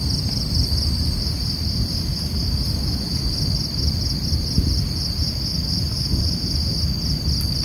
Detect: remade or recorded recorded